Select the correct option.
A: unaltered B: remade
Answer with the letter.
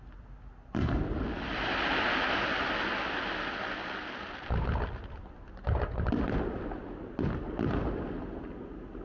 A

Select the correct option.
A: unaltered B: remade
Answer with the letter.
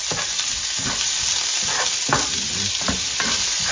A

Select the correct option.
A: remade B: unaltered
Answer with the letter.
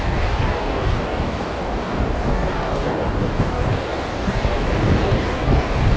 A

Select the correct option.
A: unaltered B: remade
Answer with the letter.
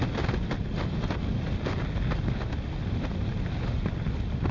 A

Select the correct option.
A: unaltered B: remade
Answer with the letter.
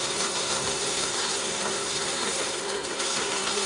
B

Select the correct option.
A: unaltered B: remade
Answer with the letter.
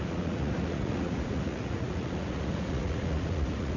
B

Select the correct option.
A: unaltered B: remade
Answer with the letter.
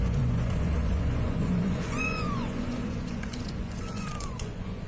B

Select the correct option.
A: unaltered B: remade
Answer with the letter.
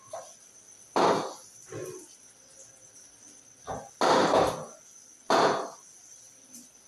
A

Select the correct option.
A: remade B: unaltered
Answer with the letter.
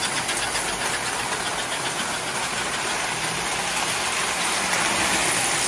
B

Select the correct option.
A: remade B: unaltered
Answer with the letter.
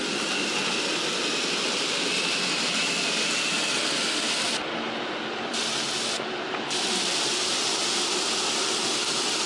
B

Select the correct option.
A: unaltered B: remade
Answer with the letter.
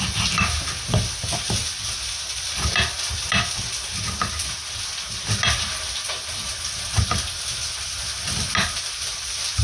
A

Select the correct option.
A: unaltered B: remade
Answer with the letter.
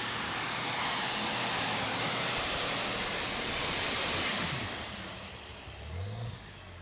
A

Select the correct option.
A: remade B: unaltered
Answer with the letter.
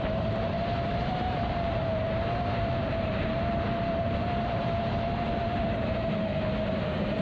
A